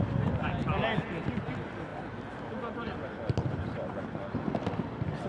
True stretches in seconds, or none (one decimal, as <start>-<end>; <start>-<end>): 0.6-1.1; 1.9-5.3